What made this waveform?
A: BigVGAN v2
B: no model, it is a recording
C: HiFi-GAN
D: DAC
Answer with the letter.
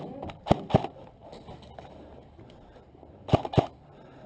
B